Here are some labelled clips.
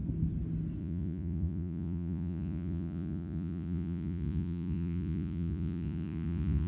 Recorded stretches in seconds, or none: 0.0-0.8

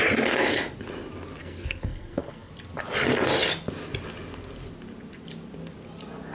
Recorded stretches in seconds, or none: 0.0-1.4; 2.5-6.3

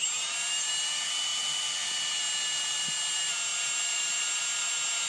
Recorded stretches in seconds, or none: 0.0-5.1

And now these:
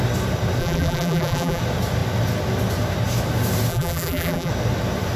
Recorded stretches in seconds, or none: 0.0-0.6; 1.6-3.7; 4.5-5.2